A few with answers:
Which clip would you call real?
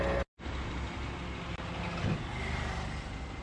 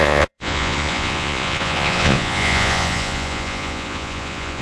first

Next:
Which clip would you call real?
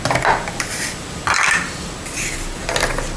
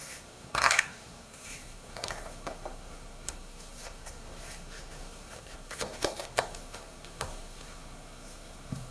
first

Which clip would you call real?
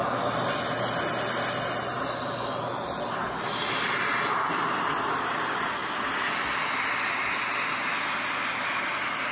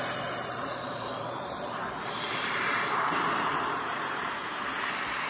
first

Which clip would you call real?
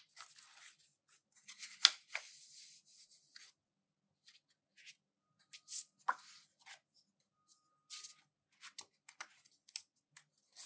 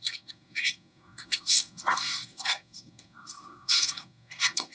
first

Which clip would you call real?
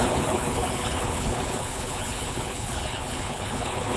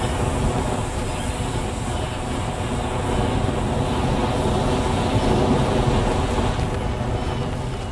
second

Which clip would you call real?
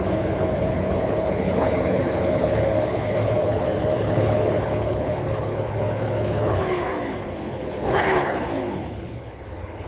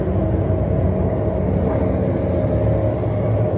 second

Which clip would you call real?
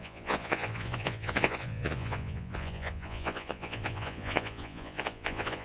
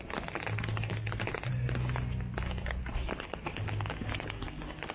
second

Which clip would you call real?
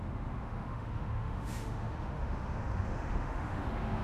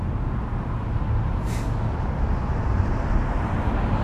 second